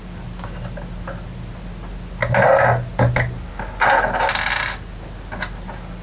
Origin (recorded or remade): recorded